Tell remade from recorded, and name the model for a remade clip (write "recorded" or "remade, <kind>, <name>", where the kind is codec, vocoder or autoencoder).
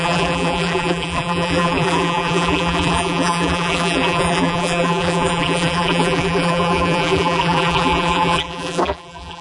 remade, vocoder, BigVGAN v2